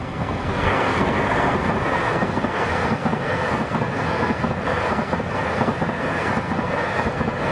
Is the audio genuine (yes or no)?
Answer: no